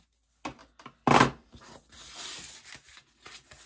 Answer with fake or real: real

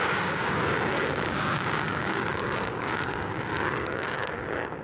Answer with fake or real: fake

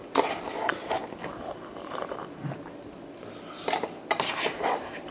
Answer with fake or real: real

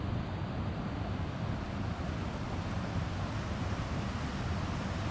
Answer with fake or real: real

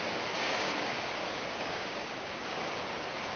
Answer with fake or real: fake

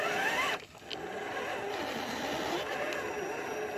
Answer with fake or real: real